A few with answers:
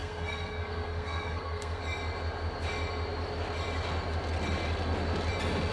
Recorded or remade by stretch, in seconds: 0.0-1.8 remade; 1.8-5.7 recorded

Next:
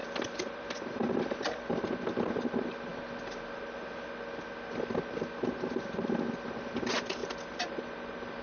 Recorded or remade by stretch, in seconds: 0.0-1.9 remade; 1.9-7.2 recorded; 7.2-7.8 remade; 7.8-8.4 recorded